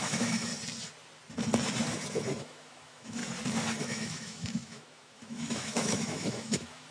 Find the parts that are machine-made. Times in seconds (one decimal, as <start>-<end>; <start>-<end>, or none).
0.0-0.5; 2.4-3.2; 3.8-6.9